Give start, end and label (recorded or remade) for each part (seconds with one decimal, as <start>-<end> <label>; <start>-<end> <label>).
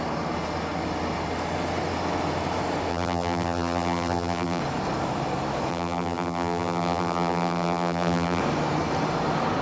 0.0-2.9 recorded; 2.9-4.6 remade; 4.6-5.7 recorded; 5.7-8.4 remade; 8.4-9.6 recorded